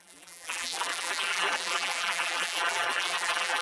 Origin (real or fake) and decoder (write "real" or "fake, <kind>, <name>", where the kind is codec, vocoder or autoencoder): fake, vocoder, BigVGAN v2